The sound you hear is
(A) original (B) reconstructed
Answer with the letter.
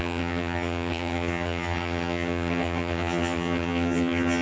B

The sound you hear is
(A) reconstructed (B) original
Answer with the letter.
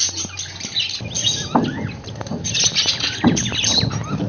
B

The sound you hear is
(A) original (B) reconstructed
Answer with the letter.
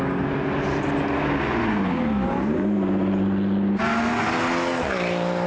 A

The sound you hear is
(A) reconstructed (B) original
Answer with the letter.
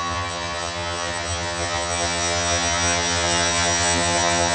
A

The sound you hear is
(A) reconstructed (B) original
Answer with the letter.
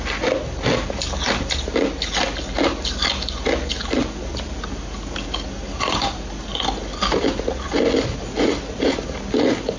B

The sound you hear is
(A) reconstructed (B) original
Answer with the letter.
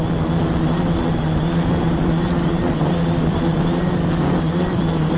B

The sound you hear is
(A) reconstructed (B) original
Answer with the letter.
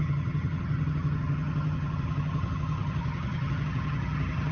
A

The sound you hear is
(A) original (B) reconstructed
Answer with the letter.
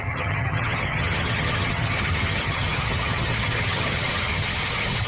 B